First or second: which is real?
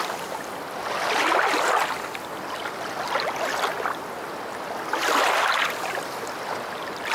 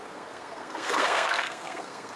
first